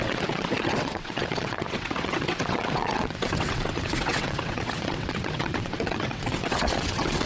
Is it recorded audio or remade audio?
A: remade